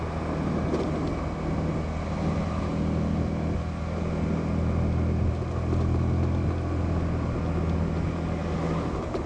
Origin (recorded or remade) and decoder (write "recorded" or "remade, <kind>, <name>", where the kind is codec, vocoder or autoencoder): recorded